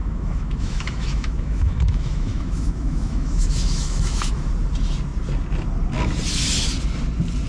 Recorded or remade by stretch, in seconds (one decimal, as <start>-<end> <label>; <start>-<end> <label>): 0.0-4.5 remade; 4.5-7.5 recorded

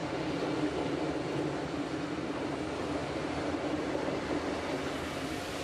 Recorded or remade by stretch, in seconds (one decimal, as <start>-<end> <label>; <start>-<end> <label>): 0.0-3.0 recorded; 3.0-4.1 remade; 4.1-5.6 recorded

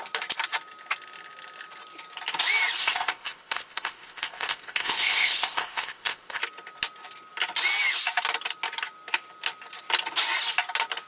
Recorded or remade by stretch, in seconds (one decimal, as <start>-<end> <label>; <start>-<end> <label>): 0.0-2.8 recorded; 2.8-6.4 remade; 6.4-11.1 recorded

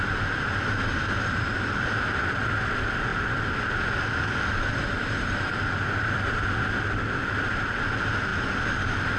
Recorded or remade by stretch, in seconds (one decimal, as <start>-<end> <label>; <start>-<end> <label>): 0.0-9.2 recorded

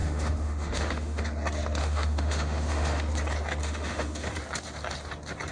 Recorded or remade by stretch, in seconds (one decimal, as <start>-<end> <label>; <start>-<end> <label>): 0.0-1.2 remade; 1.2-1.8 recorded; 1.8-3.0 remade; 3.0-3.6 recorded; 3.6-4.3 remade; 4.3-5.5 recorded